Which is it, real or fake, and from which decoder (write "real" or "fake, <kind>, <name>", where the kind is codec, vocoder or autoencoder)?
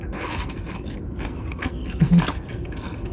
fake, codec, SNAC